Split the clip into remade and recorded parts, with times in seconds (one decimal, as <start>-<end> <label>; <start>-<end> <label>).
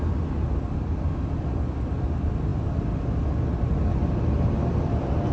0.0-5.3 recorded